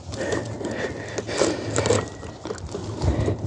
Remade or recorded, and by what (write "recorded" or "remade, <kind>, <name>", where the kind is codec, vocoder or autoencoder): recorded